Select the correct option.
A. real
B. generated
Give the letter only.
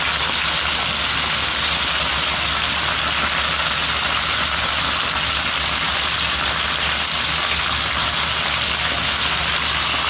A